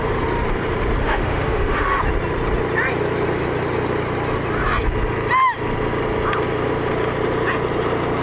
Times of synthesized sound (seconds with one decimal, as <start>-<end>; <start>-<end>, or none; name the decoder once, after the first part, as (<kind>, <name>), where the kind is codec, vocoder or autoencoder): 1.0-2.0 (autoencoder, DAC-VAE)